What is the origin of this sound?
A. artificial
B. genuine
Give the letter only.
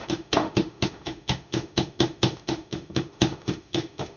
A